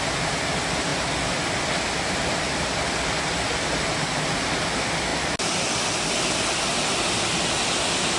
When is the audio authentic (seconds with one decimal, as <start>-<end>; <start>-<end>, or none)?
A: 0.0-8.2